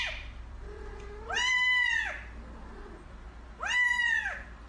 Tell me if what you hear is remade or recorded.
remade